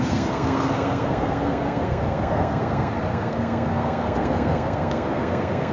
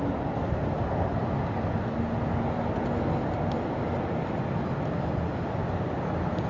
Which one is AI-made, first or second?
first